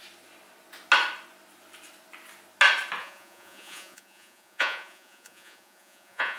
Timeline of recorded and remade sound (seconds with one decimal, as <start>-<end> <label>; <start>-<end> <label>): 0.0-3.0 recorded; 3.0-6.4 remade